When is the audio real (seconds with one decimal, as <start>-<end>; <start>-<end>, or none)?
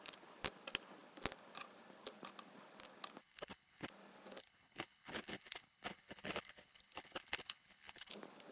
0.0-3.2; 3.9-4.4; 8.1-8.5